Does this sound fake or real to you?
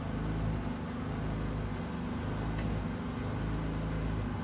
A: real